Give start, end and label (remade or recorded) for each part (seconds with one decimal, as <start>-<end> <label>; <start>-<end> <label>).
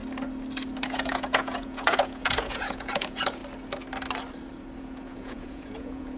0.0-0.8 recorded; 0.8-3.4 remade; 3.4-4.8 recorded; 4.8-6.2 remade